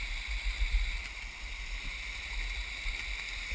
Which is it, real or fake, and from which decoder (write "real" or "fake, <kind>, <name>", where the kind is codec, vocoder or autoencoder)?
real